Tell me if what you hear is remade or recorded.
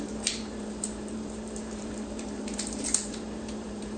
remade